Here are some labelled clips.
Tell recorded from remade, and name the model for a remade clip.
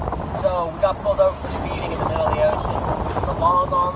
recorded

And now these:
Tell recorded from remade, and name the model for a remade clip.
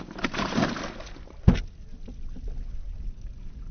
recorded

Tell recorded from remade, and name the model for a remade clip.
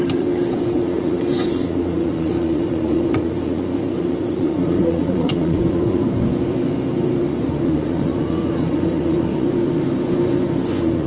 remade, vocoder, Vocos